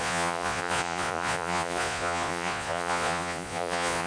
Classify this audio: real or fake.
fake